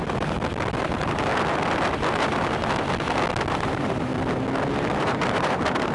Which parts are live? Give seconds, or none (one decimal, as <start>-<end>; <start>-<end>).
0.0-0.8; 1.3-3.5; 4.1-5.0